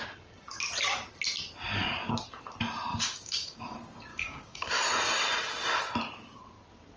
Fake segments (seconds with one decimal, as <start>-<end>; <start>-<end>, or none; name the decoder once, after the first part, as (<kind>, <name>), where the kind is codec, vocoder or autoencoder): 2.9-3.6 (codec, DAC); 4.1-4.7